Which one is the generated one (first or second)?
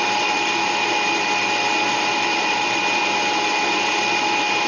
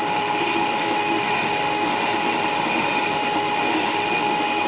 second